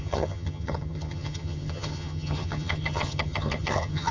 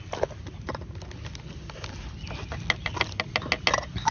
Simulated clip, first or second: first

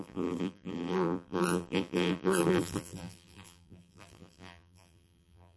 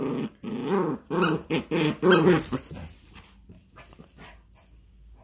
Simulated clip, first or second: first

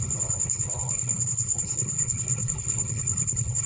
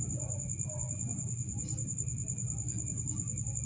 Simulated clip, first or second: first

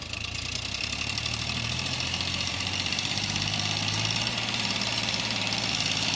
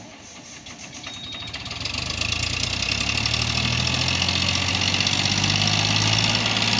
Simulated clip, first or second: first